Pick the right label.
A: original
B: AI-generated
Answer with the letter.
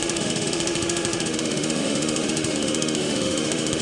B